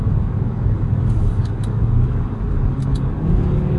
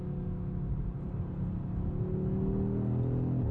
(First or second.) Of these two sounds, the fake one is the first